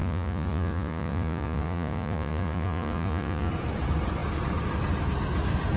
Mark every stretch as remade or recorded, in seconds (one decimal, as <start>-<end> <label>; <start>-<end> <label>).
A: 0.0-3.5 remade; 3.5-5.8 recorded